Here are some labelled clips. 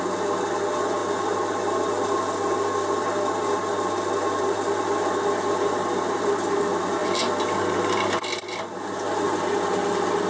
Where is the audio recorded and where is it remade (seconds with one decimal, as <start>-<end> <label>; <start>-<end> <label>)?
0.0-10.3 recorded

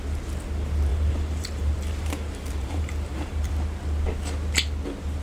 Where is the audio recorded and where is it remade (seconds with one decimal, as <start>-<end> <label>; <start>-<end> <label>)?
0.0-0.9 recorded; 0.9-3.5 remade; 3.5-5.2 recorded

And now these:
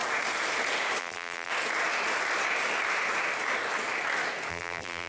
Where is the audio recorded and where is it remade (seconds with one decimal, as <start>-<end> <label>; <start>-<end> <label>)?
0.0-1.0 recorded; 1.0-1.5 remade; 1.5-4.5 recorded; 4.5-5.1 remade

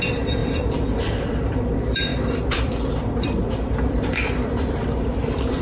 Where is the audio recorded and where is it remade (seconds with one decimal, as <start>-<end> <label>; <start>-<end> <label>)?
0.0-5.6 remade

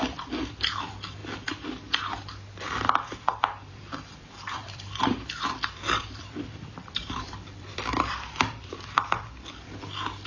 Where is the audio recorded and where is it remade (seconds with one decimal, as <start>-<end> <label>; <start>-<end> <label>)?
0.0-1.2 remade; 1.2-3.7 recorded; 3.7-10.3 remade